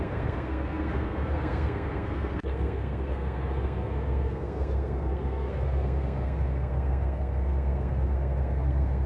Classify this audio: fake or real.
fake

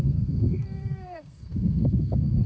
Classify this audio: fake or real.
fake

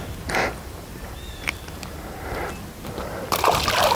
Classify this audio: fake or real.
real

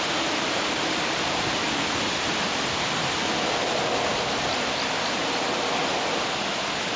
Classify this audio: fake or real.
real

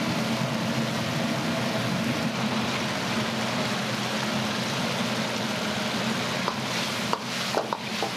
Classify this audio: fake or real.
real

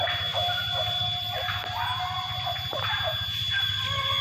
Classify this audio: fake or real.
real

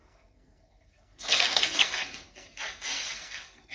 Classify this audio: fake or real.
fake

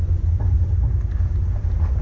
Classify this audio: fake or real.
real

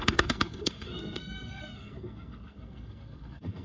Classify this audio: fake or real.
fake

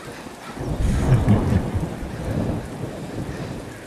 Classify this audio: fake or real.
real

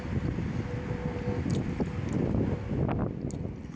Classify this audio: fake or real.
real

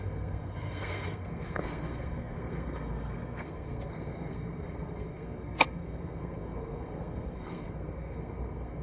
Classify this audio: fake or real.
fake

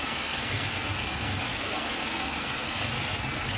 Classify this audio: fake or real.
fake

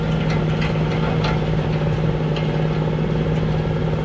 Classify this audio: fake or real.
real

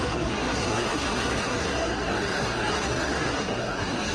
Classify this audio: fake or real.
fake